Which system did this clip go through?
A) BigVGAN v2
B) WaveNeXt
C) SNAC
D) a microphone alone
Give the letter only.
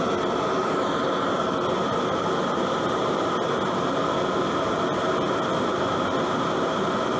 D